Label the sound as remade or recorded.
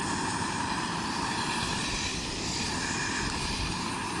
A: remade